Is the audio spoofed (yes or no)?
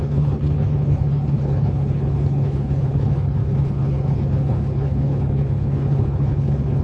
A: yes